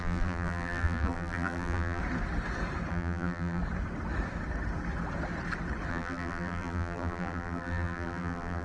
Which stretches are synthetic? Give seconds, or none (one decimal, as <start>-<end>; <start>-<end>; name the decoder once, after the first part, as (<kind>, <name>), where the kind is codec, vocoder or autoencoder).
0.0-2.0 (vocoder, BigVGAN v2); 2.9-3.6; 5.9-8.6

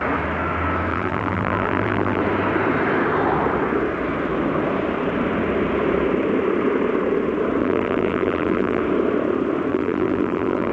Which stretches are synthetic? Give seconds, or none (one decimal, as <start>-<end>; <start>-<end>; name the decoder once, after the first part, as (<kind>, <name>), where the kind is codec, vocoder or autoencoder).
0.9-2.2 (vocoder, BigVGAN v2); 7.6-8.8; 9.7-10.7